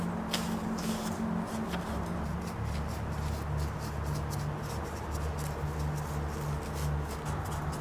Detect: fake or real real